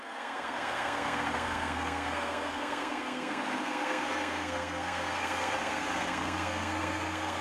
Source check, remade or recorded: remade